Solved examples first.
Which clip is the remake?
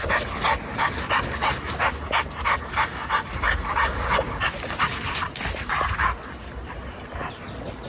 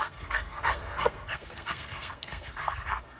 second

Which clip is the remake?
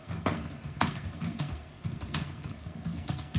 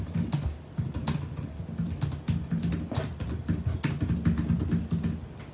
first